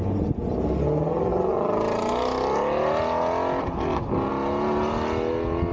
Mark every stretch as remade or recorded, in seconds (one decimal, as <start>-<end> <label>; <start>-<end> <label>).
0.0-5.7 recorded